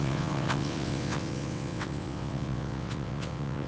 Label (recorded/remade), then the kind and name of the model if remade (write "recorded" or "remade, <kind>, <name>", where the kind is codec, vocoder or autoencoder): remade, vocoder, WaveNeXt